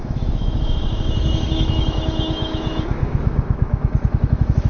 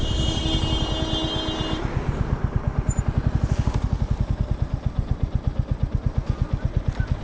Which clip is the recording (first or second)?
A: second